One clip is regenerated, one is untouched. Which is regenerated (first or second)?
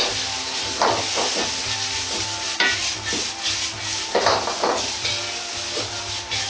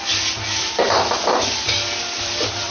second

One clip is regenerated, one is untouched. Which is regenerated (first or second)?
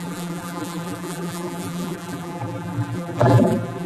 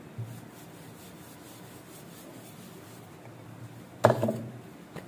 first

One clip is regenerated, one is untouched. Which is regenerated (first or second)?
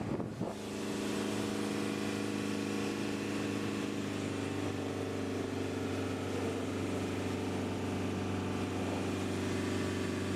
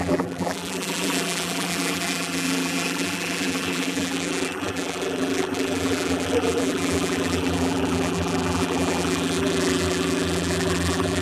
second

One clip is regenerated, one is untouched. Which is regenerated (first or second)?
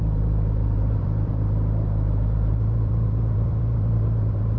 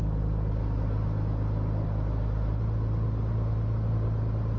first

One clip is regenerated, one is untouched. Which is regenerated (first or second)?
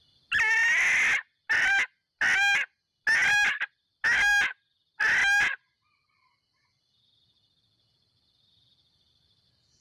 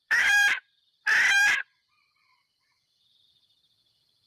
second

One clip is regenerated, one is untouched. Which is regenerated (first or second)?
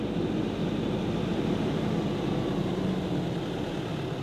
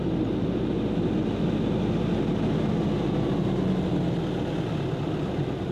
first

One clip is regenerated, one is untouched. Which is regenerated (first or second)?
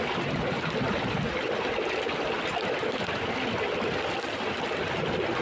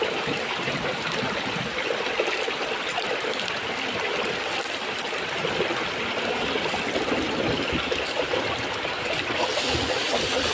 second